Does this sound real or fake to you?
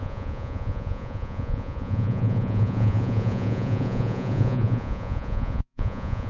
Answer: fake